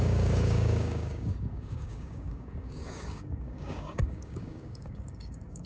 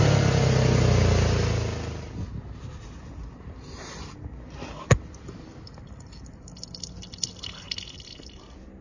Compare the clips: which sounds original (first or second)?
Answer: second